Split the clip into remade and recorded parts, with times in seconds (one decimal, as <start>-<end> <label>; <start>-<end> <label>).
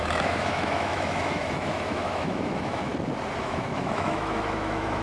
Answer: 0.0-2.9 remade; 2.9-3.4 recorded; 3.4-5.0 remade